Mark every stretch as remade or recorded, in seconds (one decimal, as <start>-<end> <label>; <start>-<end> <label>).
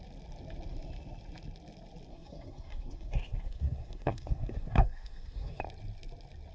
0.0-2.1 recorded; 2.1-5.6 remade; 5.6-6.5 recorded